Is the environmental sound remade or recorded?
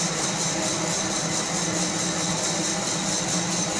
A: recorded